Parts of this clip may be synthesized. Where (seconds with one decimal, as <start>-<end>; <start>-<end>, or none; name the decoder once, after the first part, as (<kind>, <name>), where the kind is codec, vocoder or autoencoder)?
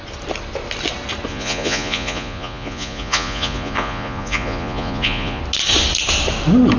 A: 1.3-5.4 (vocoder, Vocos)